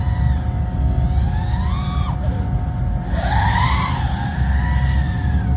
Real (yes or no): yes